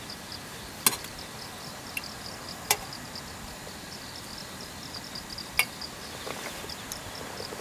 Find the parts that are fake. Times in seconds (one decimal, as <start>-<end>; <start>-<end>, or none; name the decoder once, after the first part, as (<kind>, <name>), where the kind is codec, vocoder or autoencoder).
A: none